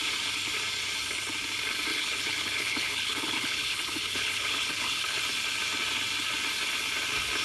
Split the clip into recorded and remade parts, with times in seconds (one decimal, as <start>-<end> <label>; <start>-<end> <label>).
0.0-1.9 recorded; 1.9-5.2 remade; 5.2-7.4 recorded